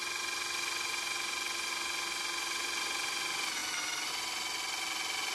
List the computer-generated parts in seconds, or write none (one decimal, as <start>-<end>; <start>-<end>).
none